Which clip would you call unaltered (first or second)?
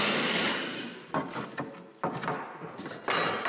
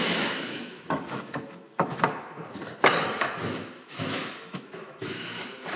first